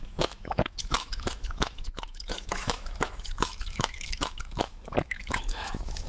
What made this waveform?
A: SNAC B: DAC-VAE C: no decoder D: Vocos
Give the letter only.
B